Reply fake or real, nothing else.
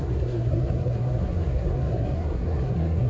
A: fake